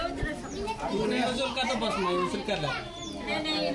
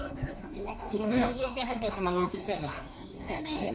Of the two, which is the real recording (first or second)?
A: first